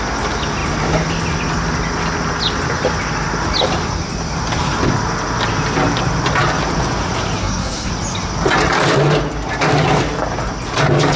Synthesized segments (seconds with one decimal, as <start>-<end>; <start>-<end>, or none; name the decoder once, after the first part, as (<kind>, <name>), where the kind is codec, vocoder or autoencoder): 7.4-7.9 (codec, SNAC)